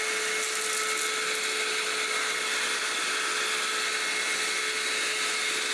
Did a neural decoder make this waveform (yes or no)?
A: no